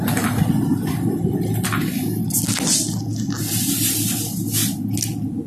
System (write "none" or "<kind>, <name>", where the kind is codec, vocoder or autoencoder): none